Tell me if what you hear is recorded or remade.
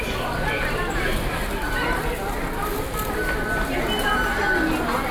recorded